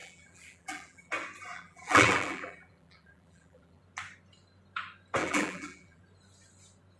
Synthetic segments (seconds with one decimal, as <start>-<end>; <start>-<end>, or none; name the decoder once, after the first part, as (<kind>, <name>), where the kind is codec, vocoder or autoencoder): 0.0-1.1 (vocoder, BigVGAN v2); 1.5-3.8; 5.2-6.0